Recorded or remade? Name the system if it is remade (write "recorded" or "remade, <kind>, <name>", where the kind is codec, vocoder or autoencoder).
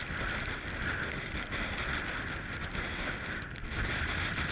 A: recorded